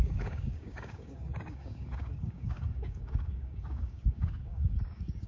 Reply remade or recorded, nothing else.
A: remade